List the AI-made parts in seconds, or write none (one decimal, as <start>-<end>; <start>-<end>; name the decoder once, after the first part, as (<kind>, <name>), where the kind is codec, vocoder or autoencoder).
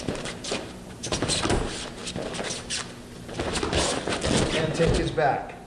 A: 0.0-2.0 (vocoder, BigVGAN v2)